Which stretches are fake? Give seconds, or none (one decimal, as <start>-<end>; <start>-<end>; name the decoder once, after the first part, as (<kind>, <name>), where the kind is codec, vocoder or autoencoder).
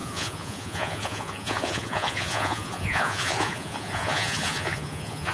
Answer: 0.0-5.3 (vocoder, Vocos)